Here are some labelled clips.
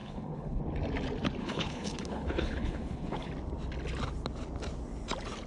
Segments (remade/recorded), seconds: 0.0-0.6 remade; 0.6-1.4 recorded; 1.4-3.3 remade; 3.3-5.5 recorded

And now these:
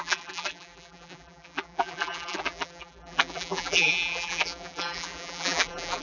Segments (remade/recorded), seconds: 0.0-6.0 remade

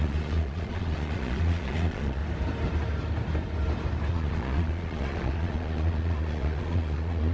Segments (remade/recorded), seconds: 0.0-2.2 remade; 2.2-4.1 recorded; 4.1-7.3 remade

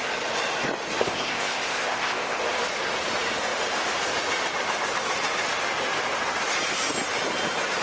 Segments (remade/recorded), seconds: 0.0-1.0 recorded; 1.0-2.4 remade; 2.4-7.8 recorded

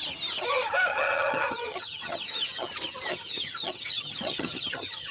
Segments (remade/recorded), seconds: 0.0-0.9 recorded; 0.9-2.7 remade; 2.7-3.1 recorded; 3.1-5.1 remade

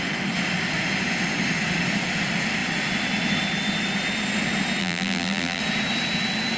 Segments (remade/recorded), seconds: 0.0-4.8 recorded; 4.8-5.6 remade; 5.6-6.6 recorded

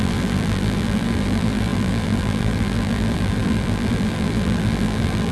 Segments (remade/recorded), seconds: 0.0-5.3 remade

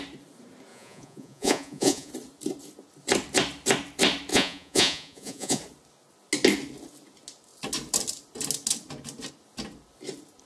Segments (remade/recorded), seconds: 0.0-0.7 recorded; 0.7-2.1 remade; 2.1-4.3 recorded; 4.3-5.6 remade; 5.6-10.5 recorded